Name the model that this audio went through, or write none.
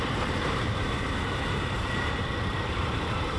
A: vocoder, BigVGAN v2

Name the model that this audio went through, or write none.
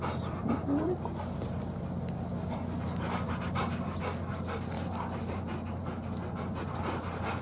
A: none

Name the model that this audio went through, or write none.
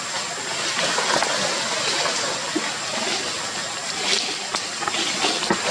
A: none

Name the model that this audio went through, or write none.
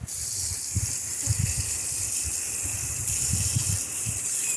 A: none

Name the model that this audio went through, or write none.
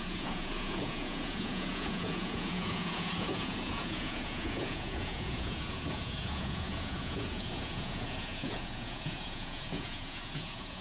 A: vocoder, Vocos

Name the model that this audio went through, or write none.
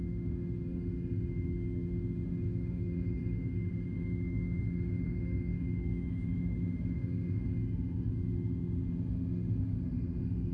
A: autoencoder, DAC-VAE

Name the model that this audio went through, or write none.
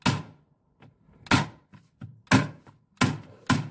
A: none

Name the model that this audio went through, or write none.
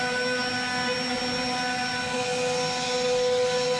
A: none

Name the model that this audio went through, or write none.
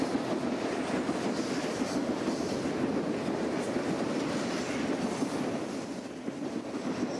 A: none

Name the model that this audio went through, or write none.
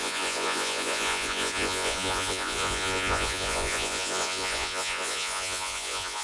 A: vocoder, Vocos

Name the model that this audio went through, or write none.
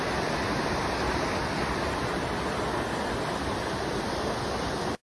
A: none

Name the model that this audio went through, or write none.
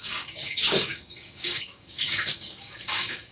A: codec, DAC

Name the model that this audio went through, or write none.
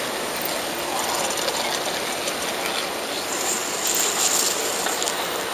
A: none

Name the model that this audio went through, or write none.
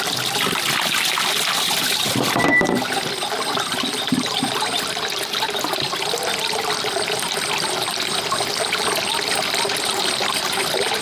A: none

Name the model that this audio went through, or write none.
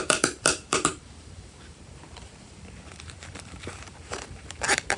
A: vocoder, BigVGAN v2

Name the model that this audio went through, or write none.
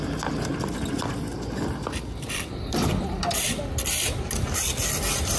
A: none